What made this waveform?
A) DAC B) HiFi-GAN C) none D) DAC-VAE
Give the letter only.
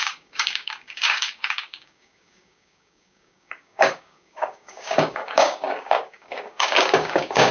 A